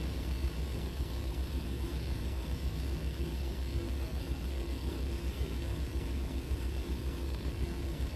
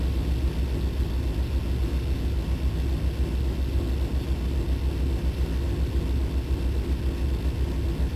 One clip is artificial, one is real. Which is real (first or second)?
second